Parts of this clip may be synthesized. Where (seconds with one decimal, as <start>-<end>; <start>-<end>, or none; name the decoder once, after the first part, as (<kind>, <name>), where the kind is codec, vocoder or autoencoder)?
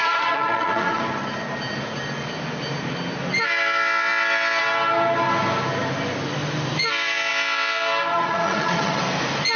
0.0-1.0 (vocoder, Vocos); 8.1-9.0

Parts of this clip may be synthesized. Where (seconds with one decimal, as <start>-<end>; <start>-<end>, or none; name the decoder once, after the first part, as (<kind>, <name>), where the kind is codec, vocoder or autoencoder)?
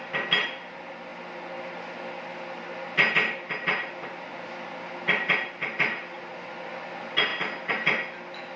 none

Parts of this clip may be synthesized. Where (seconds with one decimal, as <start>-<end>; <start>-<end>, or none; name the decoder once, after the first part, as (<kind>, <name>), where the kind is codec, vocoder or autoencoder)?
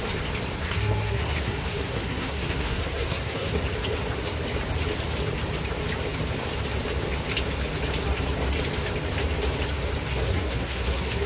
0.6-3.6 (codec, SNAC); 10.1-11.3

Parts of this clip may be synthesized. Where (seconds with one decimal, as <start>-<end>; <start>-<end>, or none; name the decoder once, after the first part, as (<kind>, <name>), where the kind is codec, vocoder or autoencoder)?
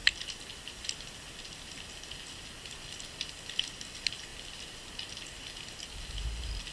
none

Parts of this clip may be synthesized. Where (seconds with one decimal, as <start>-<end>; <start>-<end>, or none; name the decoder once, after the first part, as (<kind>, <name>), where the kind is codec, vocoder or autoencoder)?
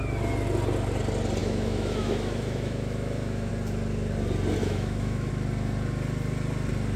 1.4-3.5 (autoencoder, DAC-VAE); 4.6-5.3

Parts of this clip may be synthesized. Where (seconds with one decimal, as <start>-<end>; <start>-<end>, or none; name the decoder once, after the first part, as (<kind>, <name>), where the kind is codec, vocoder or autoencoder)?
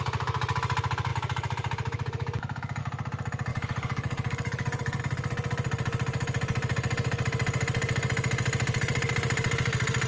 3.5-5.0 (codec, DAC)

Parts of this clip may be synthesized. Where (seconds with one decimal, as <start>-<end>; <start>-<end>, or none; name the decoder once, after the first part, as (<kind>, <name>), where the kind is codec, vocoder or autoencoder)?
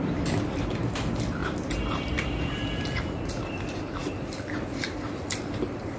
0.0-6.0 (vocoder, BigVGAN v2)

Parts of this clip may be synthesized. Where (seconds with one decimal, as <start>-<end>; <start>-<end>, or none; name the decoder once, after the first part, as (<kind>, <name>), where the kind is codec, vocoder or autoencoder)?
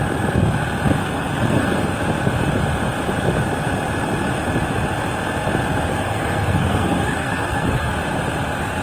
1.0-1.9 (codec, SNAC); 5.9-7.9